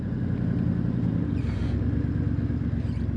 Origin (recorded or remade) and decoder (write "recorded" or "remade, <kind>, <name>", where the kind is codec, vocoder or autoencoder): recorded